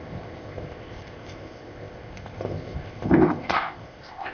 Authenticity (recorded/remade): remade